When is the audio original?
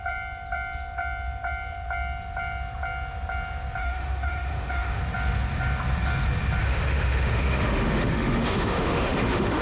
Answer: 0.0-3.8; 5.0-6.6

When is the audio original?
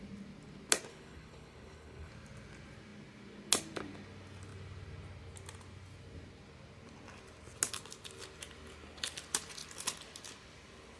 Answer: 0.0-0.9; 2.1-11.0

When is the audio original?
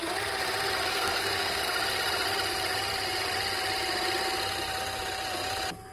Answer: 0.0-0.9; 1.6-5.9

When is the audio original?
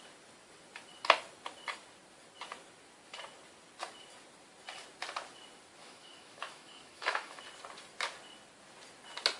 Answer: 0.0-5.8; 7.4-9.4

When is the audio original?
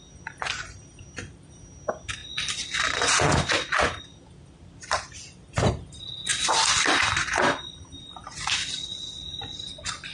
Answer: 2.2-4.0; 6.3-7.6; 8.2-9.4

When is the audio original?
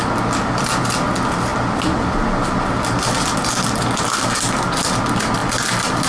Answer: 0.0-6.1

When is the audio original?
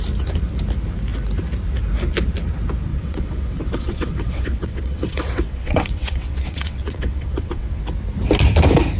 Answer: 0.0-2.9; 7.8-9.0